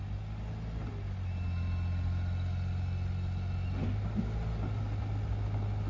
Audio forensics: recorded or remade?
recorded